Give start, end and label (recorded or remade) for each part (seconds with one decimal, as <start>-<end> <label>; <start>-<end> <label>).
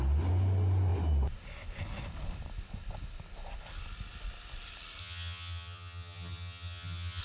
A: 0.0-5.0 recorded; 5.0-7.2 remade